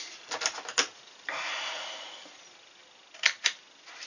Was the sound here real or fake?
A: real